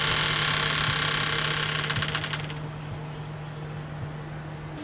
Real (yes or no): yes